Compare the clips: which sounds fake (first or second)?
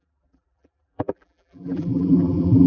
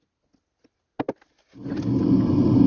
first